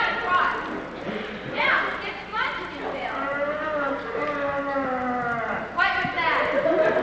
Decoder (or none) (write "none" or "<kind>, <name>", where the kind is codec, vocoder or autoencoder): none